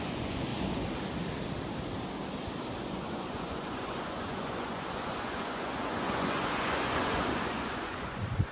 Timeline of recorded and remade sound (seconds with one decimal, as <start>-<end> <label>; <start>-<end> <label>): 0.0-0.5 remade; 0.5-2.8 recorded; 2.8-8.5 remade